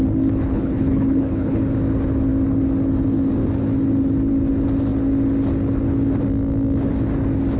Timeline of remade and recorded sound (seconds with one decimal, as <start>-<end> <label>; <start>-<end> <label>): 0.0-0.4 recorded; 0.4-1.6 remade; 1.6-7.6 recorded